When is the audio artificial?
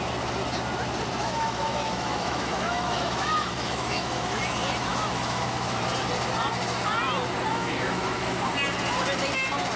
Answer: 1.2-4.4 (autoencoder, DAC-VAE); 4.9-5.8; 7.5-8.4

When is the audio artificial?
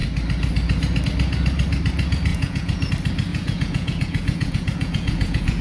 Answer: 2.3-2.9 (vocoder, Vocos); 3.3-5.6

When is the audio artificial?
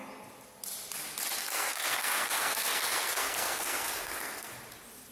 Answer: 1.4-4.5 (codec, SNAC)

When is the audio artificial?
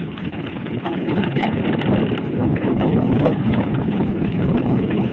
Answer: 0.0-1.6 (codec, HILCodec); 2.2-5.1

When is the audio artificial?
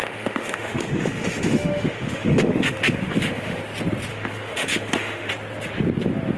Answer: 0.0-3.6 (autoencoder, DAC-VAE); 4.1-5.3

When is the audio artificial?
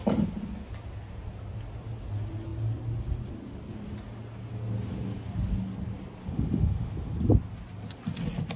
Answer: 6.2-6.9 (autoencoder, DAC-VAE)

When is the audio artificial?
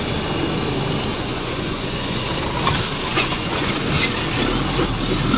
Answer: 1.1-2.2 (vocoder, Vocos); 3.1-3.7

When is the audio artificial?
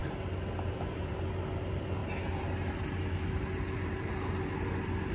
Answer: none